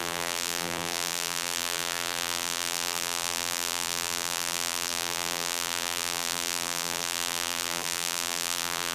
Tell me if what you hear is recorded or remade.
remade